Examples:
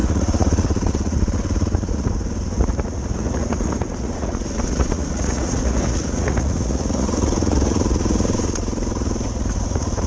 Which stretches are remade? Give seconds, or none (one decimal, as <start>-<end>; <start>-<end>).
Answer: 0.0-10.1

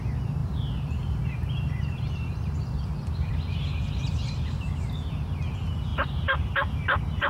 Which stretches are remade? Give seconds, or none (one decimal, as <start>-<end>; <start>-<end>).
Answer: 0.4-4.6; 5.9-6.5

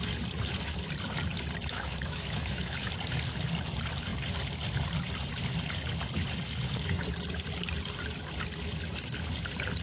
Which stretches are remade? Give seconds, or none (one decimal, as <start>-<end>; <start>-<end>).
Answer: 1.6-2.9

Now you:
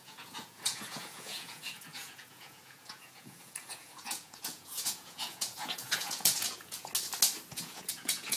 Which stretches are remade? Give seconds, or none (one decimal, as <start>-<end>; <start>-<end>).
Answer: 0.0-6.9; 7.5-8.4